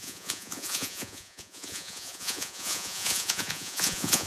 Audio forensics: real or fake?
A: fake